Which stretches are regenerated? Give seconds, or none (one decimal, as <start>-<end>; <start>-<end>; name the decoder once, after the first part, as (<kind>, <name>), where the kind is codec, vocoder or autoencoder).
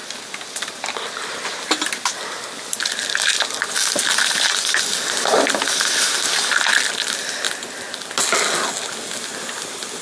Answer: none